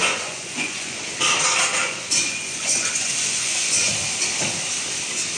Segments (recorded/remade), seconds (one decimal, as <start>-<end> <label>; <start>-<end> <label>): 0.0-1.0 remade; 1.0-1.8 recorded; 1.8-3.9 remade; 3.9-5.4 recorded